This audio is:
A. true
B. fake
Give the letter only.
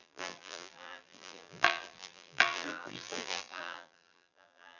B